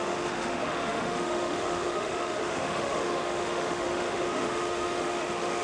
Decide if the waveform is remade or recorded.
remade